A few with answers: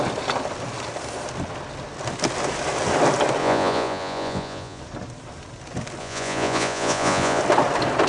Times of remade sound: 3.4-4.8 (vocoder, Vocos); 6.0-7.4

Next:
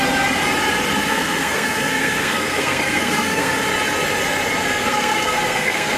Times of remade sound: 1.1-3.5 (codec, SNAC); 4.6-6.0

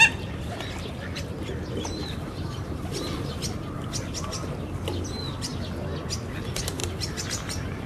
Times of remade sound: 2.0-2.8 (vocoder, BigVGAN v2); 6.8-7.9

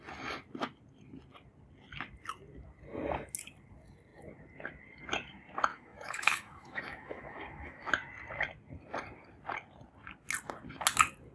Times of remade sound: 5.7-7.9 (autoencoder, DAC-VAE)